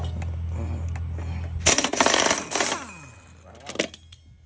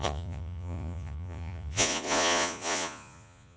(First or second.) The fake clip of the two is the second